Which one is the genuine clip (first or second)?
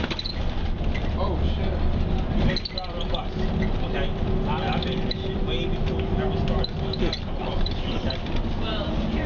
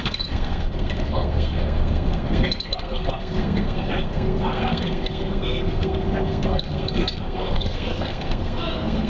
first